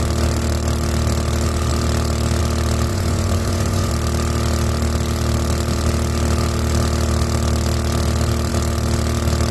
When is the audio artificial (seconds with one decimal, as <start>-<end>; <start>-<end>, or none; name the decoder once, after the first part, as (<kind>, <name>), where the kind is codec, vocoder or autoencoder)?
2.9-3.9 (vocoder, Vocos)